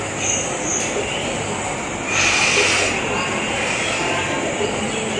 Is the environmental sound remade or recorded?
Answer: recorded